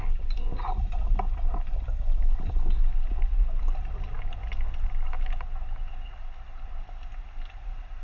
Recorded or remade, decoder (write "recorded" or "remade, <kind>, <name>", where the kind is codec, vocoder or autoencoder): recorded